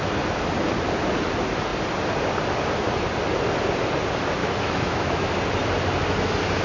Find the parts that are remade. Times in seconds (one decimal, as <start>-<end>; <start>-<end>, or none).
4.4-5.3